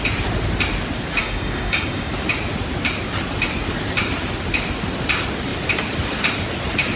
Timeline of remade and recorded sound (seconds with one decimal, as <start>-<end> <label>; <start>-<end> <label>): 0.0-1.2 recorded; 1.2-2.1 remade; 2.1-7.0 recorded